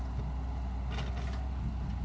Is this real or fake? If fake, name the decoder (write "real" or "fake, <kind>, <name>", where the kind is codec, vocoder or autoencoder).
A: real